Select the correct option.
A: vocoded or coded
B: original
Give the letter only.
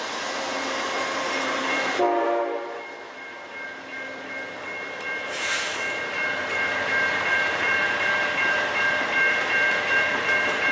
A